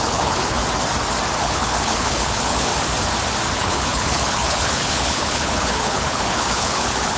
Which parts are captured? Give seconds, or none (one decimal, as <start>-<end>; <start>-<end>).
0.6-1.4; 2.7-3.5